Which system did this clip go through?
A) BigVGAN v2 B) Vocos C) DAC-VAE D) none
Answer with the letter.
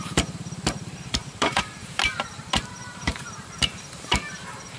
A